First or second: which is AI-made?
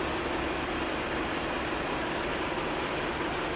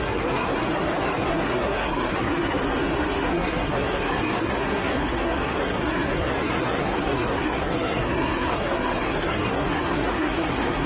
second